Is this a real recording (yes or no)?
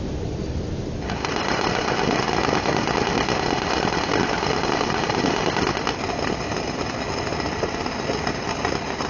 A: yes